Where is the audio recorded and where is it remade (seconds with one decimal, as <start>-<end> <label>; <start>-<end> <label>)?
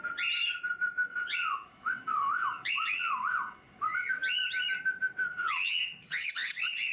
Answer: 0.0-1.1 recorded; 1.1-4.1 remade; 4.1-5.3 recorded; 5.3-6.9 remade